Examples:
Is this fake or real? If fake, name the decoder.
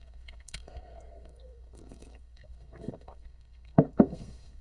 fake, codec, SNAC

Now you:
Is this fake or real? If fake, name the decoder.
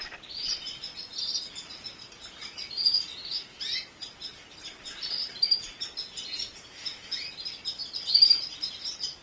real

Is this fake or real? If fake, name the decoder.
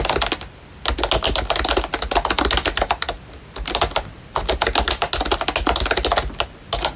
real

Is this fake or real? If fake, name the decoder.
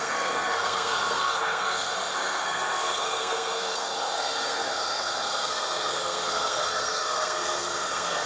fake, codec, SNAC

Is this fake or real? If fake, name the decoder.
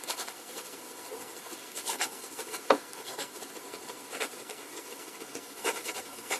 fake, codec, SNAC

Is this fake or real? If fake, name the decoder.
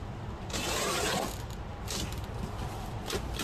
real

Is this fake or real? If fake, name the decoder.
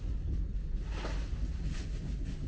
real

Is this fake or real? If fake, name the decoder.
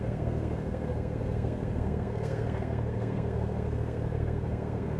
fake, codec, SNAC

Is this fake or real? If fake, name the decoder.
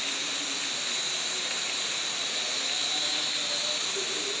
real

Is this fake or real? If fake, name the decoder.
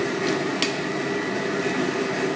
real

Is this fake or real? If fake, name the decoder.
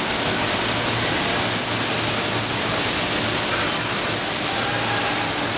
real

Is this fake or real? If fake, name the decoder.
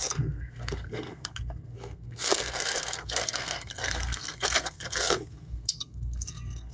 fake, codec, SNAC